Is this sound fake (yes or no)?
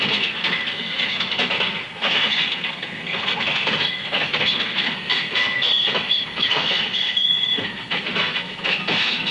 yes